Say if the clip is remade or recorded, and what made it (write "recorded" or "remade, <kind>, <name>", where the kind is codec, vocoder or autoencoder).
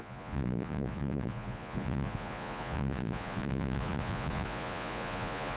remade, vocoder, Vocos